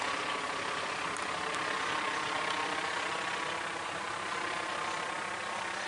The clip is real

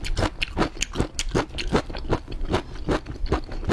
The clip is real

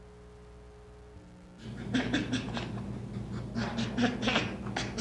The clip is real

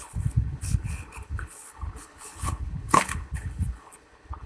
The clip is fake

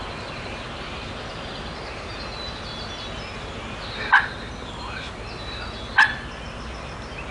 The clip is real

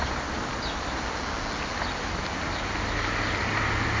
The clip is real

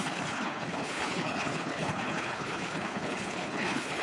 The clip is fake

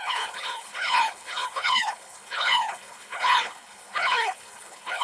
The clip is fake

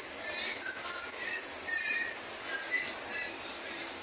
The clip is real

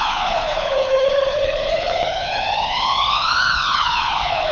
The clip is fake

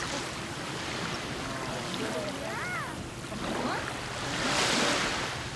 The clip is real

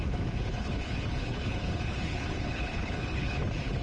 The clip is fake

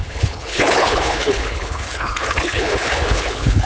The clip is fake